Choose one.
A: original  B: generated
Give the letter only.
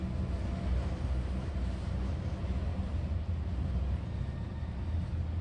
A